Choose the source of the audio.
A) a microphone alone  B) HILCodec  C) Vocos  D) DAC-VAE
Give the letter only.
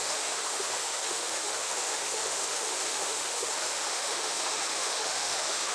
D